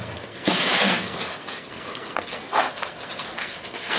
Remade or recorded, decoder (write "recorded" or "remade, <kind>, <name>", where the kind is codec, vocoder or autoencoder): remade, codec, SNAC